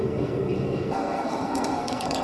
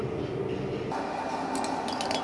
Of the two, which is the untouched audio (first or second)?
second